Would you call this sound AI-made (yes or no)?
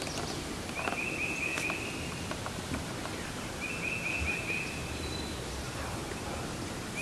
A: no